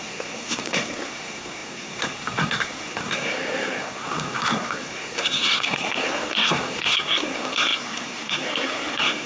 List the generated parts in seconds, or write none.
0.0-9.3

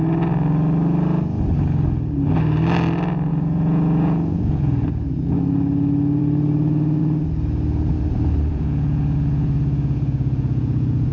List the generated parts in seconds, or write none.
3.3-4.9; 8.5-11.1

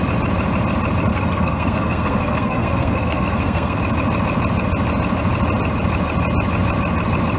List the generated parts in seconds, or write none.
1.1-3.8

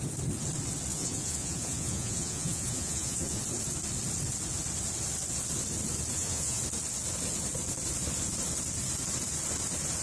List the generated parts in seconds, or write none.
0.9-3.4; 6.1-6.6